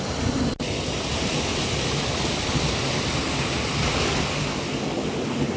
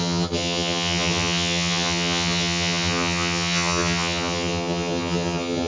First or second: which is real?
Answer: first